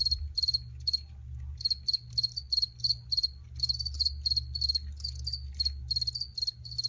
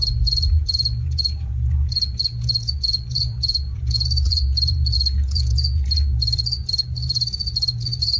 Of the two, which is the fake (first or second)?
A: second